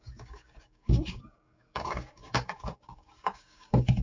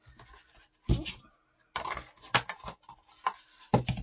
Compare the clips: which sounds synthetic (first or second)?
first